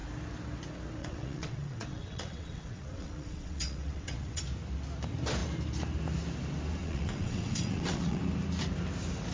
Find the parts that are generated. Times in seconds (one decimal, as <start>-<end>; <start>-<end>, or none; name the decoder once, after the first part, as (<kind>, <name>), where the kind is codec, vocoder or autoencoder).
1.0-4.4 (vocoder, WaveNeXt); 6.8-8.2